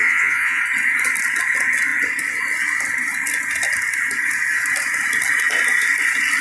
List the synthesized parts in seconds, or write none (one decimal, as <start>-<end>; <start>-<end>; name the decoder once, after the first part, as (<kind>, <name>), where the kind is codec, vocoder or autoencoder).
0.0-0.6 (vocoder, Vocos)